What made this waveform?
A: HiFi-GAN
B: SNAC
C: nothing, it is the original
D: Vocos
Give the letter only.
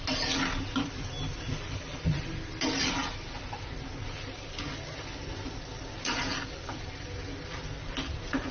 C